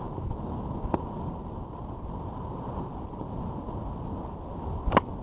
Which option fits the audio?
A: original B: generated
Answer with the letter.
A